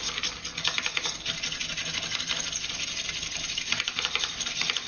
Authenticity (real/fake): real